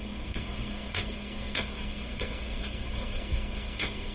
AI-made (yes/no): yes